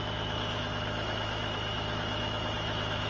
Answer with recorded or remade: remade